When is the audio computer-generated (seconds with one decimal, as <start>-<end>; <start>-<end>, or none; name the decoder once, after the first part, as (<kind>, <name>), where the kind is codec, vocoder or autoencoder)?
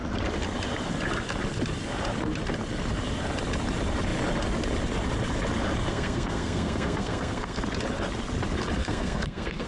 5.9-7.6 (codec, SNAC); 8.8-9.7